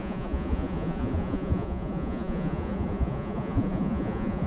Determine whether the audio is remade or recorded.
remade